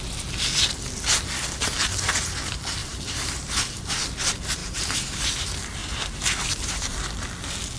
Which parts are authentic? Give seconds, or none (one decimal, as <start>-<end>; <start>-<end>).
0.0-2.8; 3.7-4.6; 5.2-5.8; 7.0-7.8